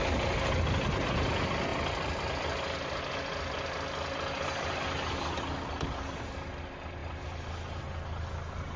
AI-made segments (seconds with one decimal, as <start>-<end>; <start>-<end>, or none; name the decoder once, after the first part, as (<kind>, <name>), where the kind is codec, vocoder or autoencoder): none

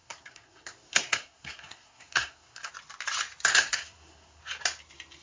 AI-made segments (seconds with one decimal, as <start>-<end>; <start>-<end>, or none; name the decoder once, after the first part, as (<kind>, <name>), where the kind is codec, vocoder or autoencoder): 0.0-2.7 (codec, SNAC); 3.5-4.4